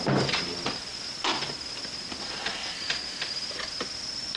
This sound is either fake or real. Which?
real